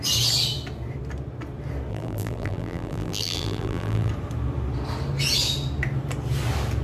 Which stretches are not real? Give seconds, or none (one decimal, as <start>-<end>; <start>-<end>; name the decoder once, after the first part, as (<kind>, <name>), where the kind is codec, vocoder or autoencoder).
1.9-4.1 (vocoder, BigVGAN v2)